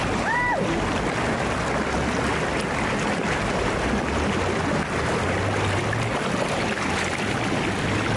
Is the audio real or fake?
real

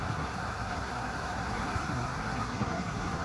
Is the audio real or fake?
fake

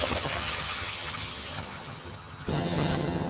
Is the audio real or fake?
fake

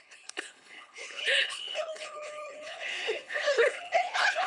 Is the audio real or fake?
fake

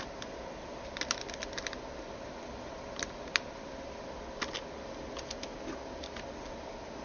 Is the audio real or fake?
real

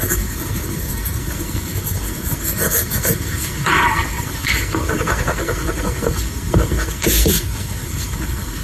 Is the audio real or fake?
fake